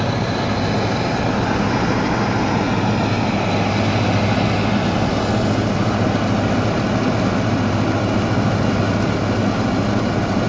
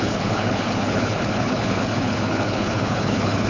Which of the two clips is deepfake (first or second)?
second